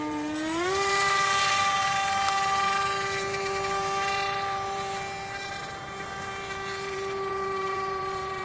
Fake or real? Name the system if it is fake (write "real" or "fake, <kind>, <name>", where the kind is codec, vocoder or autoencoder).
fake, vocoder, BigVGAN v2